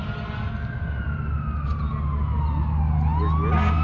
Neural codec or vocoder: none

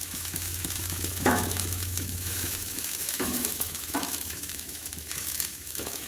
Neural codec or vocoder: autoencoder, DAC-VAE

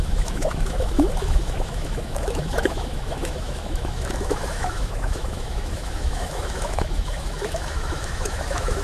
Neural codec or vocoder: autoencoder, DAC-VAE